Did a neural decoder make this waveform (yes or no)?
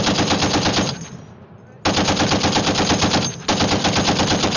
no